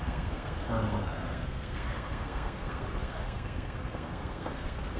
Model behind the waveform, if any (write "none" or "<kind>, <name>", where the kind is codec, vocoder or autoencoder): codec, SNAC